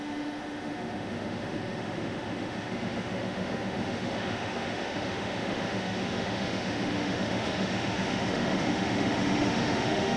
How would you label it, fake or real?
fake